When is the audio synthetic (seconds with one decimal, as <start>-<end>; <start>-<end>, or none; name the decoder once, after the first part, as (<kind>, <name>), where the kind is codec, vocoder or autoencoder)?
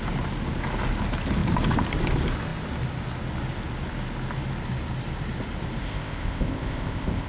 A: 5.8-7.3 (codec, ZipCodec)